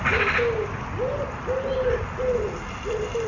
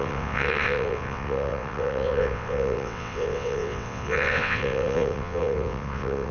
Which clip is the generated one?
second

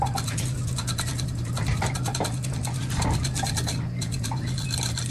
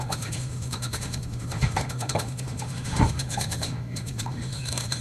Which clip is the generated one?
second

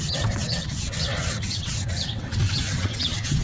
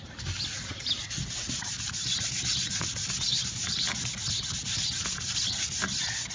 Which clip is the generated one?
first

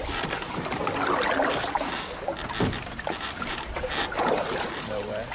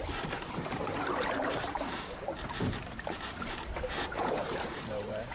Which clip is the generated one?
second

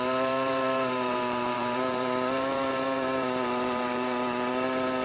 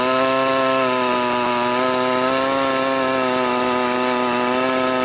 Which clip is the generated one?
first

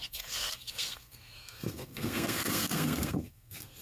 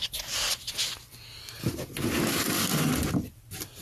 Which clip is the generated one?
first